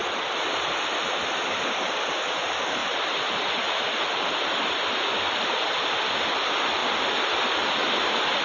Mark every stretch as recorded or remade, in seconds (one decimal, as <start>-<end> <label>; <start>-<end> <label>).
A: 0.0-8.4 recorded